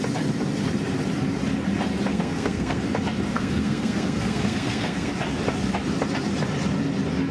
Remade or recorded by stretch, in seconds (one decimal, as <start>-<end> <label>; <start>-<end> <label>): 0.0-2.1 recorded; 2.1-2.8 remade; 2.8-3.3 recorded; 3.3-5.1 remade; 5.1-7.3 recorded